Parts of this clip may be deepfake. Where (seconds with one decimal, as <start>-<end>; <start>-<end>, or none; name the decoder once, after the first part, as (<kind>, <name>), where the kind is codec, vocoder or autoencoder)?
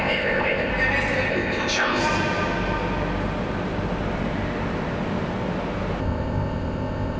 0.0-0.7 (codec, ZipCodec); 1.3-2.0; 6.0-7.2